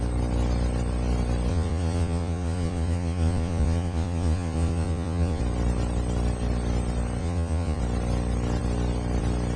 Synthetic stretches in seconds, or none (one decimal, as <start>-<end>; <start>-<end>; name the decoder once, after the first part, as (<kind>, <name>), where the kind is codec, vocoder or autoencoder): 1.5-5.4 (vocoder, Vocos); 7.2-7.8